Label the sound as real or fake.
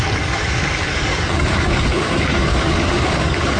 fake